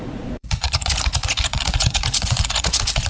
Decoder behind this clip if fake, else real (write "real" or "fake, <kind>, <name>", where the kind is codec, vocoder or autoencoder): fake, vocoder, Vocos